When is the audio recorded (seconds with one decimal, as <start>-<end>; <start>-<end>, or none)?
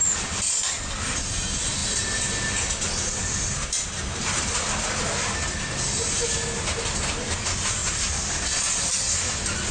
0.0-7.8; 8.3-9.7